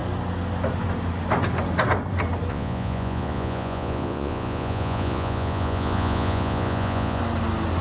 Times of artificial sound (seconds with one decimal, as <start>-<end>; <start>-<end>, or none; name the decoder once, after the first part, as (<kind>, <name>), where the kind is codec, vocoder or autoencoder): 2.5-7.2 (vocoder, Vocos)